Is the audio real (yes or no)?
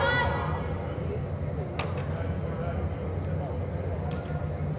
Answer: yes